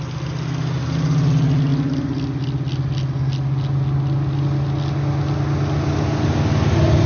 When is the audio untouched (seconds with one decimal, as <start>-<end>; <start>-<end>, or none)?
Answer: 0.0-7.1

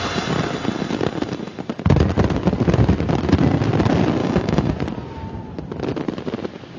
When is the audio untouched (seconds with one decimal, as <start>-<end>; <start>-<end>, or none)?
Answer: 0.0-4.2; 4.7-6.8

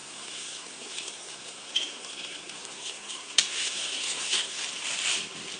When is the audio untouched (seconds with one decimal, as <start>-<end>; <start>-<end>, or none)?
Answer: 4.6-5.6

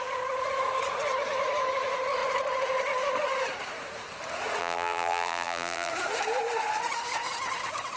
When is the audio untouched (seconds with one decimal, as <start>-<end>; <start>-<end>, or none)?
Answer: 0.0-4.6; 5.9-8.0

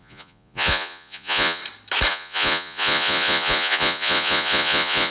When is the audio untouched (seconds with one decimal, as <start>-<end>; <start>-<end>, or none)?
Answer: 1.6-2.1

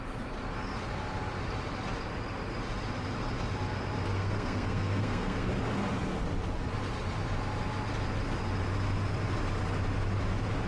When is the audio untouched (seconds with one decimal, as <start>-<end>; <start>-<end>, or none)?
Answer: 0.0-4.1; 5.5-10.7

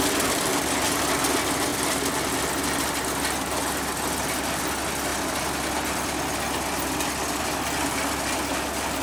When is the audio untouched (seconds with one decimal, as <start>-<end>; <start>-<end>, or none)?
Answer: 0.0-9.0

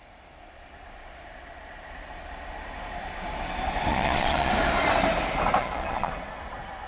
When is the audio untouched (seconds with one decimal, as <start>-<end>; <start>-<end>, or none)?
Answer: 0.0-3.9; 4.5-5.6; 6.1-6.9